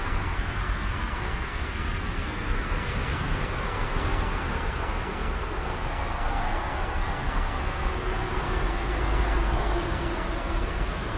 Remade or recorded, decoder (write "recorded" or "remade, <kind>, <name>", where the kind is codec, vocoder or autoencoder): remade, codec, SNAC